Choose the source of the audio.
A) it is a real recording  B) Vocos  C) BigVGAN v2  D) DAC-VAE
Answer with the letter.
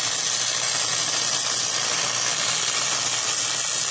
A